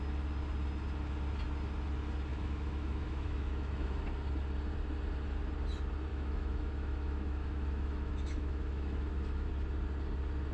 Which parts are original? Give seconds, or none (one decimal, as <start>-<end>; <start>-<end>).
0.0-2.3; 4.0-6.1; 9.5-10.5